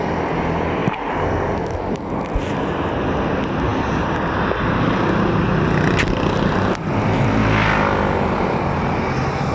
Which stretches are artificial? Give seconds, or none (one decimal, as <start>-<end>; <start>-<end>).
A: none